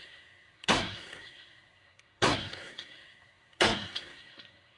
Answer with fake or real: fake